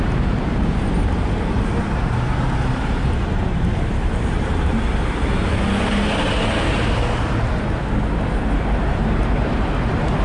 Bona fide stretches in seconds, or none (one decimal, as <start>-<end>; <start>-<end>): 4.7-8.9